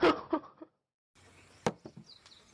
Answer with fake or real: real